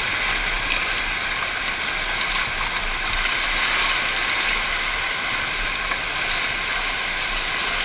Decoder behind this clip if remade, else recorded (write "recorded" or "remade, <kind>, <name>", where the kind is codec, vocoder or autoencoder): recorded